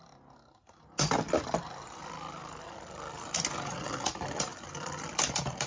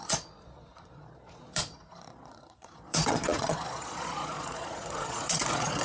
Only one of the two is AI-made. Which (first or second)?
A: second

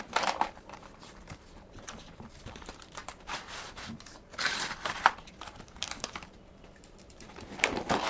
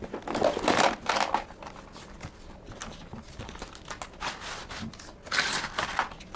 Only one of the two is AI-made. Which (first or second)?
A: first